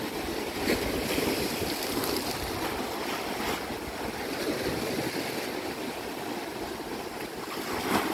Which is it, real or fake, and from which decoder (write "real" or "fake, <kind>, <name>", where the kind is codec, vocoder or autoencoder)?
real